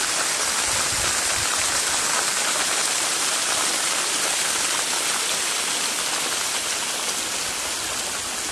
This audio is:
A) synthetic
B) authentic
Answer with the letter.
B